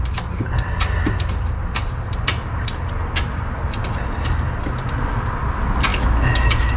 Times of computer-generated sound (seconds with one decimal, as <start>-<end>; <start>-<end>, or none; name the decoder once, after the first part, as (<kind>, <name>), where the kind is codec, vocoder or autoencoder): 5.9-6.8 (autoencoder, DAC-VAE)